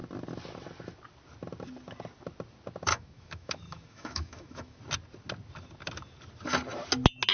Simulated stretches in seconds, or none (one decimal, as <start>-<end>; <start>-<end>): 2.9-4.8